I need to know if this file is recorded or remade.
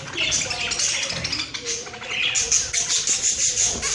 recorded